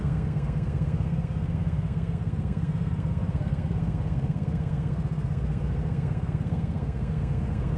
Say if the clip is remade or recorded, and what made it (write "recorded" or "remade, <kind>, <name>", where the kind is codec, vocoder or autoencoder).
remade, codec, SNAC